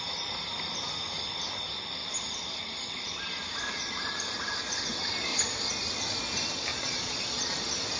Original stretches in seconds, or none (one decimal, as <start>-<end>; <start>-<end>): 0.0-6.7; 7.6-8.0